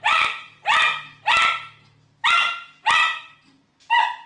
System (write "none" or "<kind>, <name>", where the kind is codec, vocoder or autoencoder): none